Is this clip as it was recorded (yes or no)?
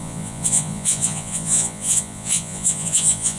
no